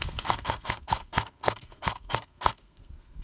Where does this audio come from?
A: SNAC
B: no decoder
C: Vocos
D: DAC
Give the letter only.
A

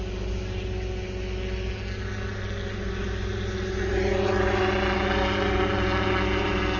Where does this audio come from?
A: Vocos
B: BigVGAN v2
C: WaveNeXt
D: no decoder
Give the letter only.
D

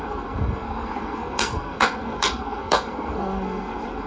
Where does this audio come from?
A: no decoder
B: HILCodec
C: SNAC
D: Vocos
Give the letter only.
C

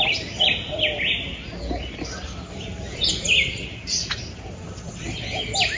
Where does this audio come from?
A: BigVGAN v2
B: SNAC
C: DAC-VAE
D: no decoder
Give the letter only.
A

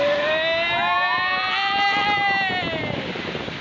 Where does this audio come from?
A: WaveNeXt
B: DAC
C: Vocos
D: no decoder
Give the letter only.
D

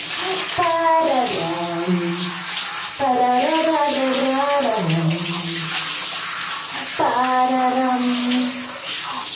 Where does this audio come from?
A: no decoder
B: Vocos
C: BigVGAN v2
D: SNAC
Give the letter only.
A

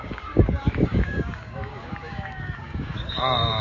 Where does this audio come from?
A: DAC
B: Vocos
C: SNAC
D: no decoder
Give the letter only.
A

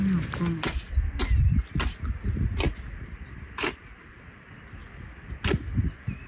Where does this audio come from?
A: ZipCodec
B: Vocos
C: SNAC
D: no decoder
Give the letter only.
D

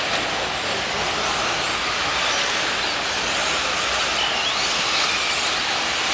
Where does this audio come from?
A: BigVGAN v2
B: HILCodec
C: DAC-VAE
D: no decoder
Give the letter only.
D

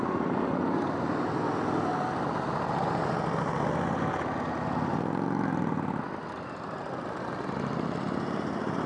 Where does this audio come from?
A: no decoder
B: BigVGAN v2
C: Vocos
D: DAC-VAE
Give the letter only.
A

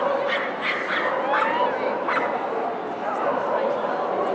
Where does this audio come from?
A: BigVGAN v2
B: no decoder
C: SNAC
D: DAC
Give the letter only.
B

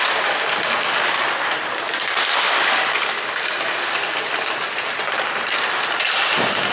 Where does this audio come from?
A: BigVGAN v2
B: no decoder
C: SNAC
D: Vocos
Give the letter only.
A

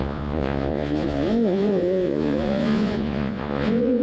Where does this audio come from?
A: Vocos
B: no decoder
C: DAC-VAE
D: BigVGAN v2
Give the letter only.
A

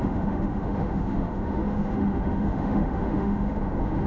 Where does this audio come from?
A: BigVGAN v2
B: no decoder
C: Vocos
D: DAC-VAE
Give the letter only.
D